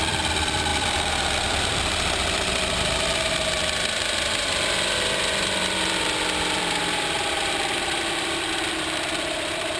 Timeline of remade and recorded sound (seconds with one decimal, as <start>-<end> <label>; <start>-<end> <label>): 0.0-9.8 remade